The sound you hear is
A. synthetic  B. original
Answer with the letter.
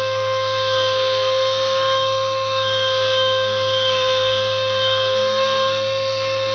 A